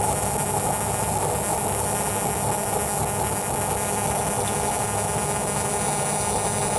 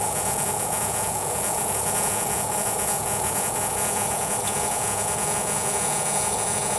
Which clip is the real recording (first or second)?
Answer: first